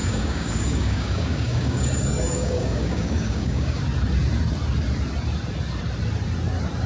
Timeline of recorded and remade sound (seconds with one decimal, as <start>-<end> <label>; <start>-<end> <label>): 0.0-3.8 remade; 3.8-6.9 recorded

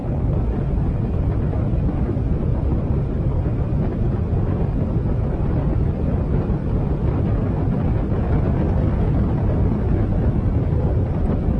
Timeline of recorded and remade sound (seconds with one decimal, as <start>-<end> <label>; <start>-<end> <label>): 0.0-11.6 recorded

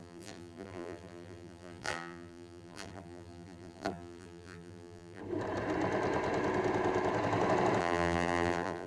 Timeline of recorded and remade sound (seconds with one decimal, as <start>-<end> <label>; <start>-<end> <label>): 0.0-5.2 remade; 5.2-7.8 recorded; 7.8-8.9 remade